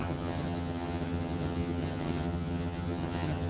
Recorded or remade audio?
remade